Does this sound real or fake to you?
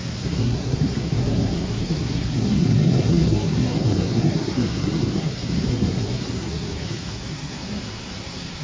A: fake